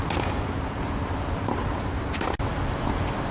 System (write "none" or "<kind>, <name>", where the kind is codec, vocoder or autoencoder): none